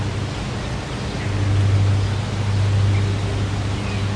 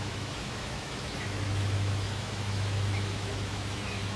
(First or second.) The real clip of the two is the first